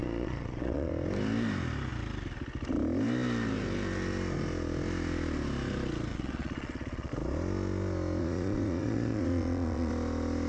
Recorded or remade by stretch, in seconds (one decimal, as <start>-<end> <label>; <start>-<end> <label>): 0.0-0.9 remade; 0.9-6.1 recorded; 6.1-7.1 remade; 7.1-8.2 recorded; 8.2-9.9 remade; 9.9-10.5 recorded